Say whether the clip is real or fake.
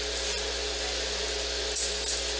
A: real